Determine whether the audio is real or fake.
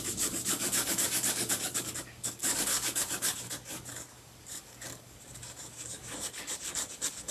fake